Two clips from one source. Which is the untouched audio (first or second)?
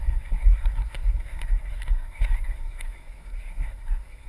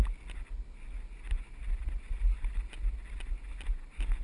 second